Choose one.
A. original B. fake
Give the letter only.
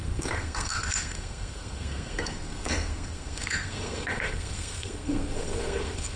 B